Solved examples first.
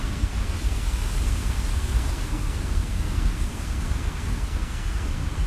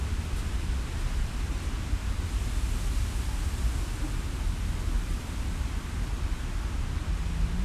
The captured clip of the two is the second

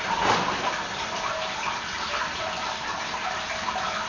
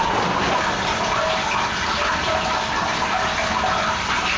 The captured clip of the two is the second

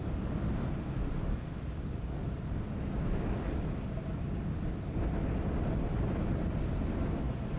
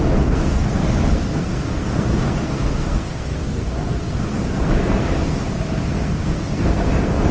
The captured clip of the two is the first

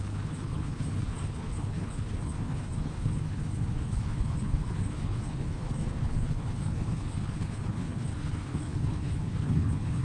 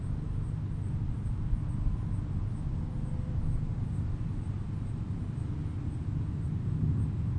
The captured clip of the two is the second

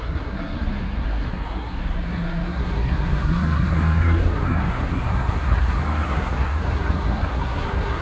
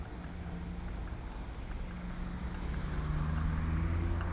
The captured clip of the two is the second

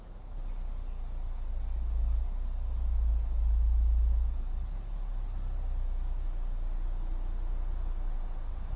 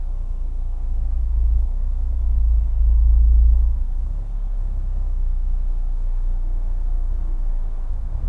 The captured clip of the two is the first